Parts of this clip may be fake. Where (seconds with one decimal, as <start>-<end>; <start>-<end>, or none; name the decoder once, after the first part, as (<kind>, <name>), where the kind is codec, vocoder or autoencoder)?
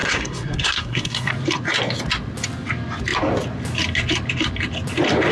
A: 0.0-1.3 (codec, SNAC)